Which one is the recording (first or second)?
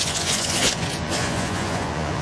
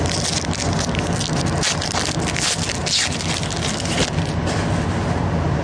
second